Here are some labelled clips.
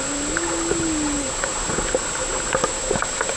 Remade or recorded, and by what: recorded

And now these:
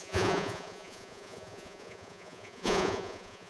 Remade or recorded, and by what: remade, vocoder, Vocos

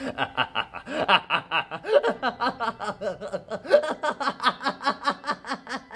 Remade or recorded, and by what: recorded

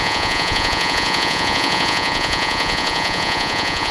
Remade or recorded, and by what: remade, vocoder, Vocos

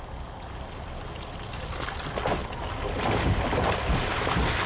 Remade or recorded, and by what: recorded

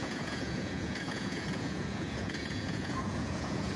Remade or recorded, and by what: remade, vocoder, Vocos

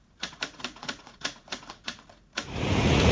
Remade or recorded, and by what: remade, vocoder, Vocos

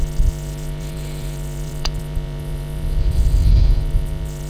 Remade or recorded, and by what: remade, vocoder, Vocos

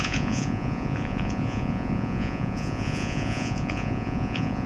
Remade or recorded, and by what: remade, vocoder, Vocos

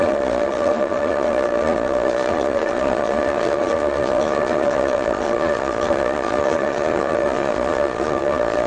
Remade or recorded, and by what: remade, vocoder, Vocos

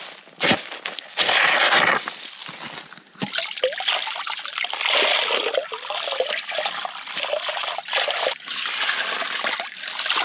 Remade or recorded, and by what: recorded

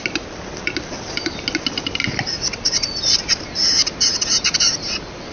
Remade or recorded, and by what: recorded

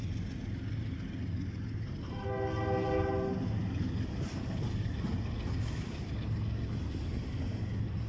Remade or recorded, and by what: recorded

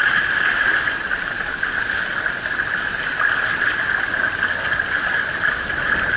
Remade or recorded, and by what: recorded